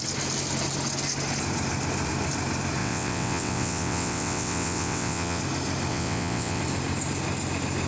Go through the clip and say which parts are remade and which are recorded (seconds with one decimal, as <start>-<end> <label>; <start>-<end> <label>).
0.0-2.8 recorded; 2.8-5.4 remade; 5.4-5.9 recorded; 5.9-6.6 remade; 6.6-7.9 recorded